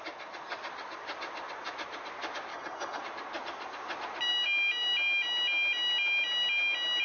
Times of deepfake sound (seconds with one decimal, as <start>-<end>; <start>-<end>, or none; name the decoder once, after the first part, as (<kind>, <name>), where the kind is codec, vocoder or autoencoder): 2.5-3.0 (codec, HILCodec)